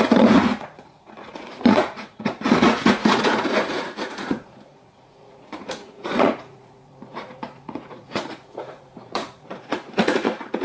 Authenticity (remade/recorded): remade